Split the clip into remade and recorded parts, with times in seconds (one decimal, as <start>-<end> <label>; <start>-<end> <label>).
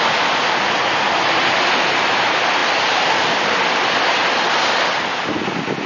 0.0-5.9 recorded